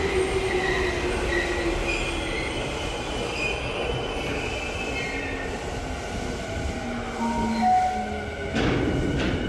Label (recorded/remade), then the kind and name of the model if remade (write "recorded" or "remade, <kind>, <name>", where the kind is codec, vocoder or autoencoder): recorded